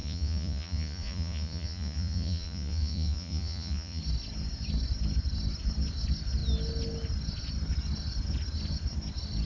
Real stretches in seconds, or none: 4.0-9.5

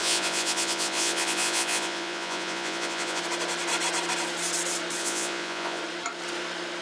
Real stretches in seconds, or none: 3.2-5.0; 5.8-6.8

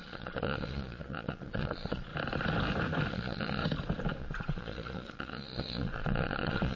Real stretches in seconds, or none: 2.1-3.1; 3.6-4.2

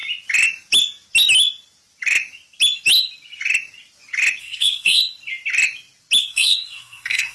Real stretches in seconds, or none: 0.0-4.4; 5.0-6.2

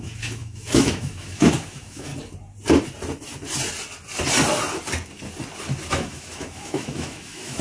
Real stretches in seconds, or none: 2.1-5.9

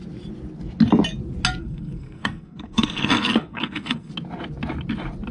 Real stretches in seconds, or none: 0.0-1.6; 4.1-5.3